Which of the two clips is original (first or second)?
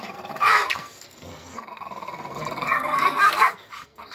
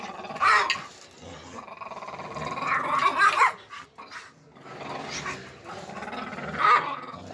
second